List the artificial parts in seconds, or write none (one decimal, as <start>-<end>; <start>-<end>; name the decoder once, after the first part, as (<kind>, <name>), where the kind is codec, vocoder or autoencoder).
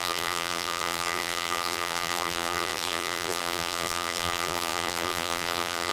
0.0-5.9 (vocoder, BigVGAN v2)